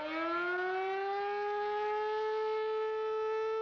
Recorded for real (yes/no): yes